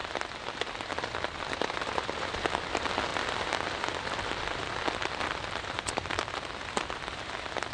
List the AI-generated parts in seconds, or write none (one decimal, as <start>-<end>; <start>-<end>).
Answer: 1.7-7.7